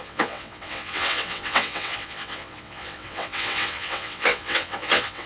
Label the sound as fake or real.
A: fake